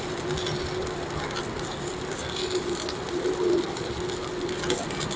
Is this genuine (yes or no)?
yes